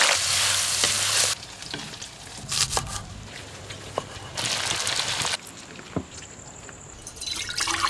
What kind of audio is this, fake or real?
real